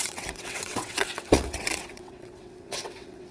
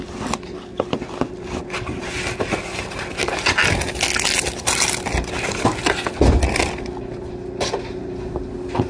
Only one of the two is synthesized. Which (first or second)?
first